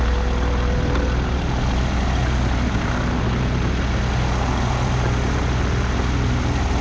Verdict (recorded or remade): recorded